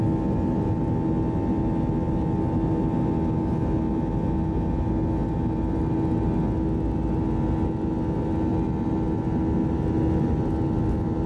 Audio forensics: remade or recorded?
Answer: recorded